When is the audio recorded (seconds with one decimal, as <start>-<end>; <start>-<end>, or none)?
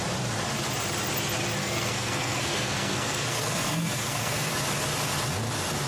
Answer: 0.0-1.6; 4.5-5.9